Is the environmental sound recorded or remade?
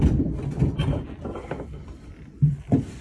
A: remade